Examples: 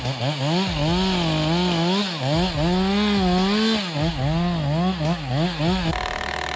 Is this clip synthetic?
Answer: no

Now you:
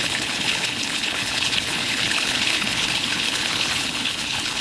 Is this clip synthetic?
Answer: yes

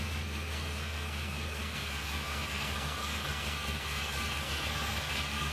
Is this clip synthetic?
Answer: yes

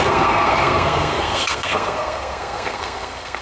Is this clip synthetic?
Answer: yes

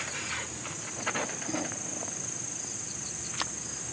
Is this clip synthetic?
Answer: no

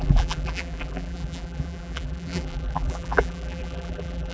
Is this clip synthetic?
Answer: yes